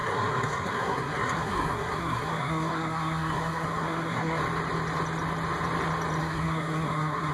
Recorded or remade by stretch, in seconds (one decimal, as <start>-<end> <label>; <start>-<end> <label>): 0.0-4.4 remade; 4.4-6.2 recorded; 6.2-7.3 remade